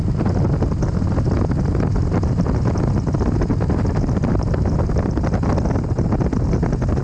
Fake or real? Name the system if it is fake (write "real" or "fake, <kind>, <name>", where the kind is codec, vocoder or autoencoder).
real